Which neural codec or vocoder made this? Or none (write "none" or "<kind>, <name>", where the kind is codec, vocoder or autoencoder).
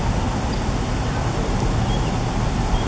none